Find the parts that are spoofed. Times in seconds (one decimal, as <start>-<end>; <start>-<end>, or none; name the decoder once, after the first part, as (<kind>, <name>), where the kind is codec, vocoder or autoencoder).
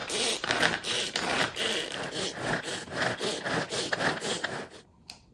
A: 0.0-2.1 (vocoder, BigVGAN v2)